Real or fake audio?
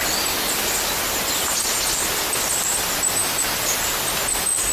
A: real